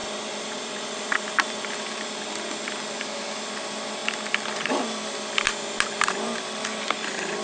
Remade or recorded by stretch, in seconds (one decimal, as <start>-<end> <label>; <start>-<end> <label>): 0.0-1.8 remade; 1.8-4.0 recorded; 4.0-6.6 remade; 6.6-7.4 recorded